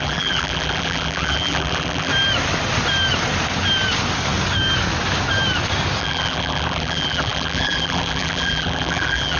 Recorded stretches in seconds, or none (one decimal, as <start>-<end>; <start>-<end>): 2.1-6.0